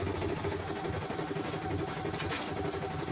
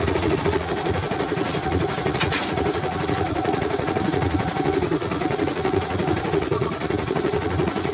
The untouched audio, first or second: first